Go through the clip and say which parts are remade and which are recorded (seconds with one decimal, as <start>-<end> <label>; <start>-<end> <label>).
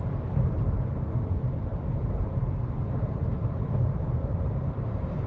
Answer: 0.0-1.7 recorded; 1.7-5.3 remade